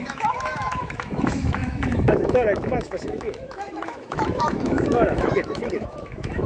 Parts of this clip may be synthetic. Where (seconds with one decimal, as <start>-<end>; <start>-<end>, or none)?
0.0-6.5